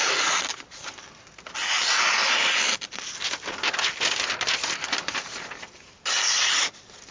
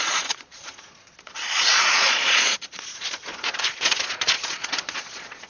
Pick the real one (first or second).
first